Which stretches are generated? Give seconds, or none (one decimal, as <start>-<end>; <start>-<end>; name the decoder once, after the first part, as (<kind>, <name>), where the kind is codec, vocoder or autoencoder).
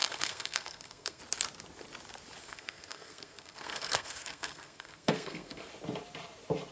0.0-1.2 (codec, SNAC); 2.4-5.7